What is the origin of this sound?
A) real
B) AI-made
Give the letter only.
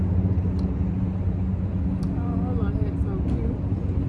A